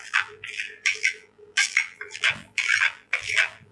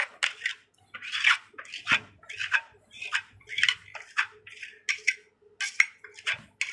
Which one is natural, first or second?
second